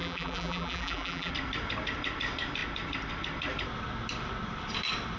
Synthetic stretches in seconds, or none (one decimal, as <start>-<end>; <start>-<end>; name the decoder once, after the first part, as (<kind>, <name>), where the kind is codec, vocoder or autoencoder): 0.0-1.3 (vocoder, BigVGAN v2)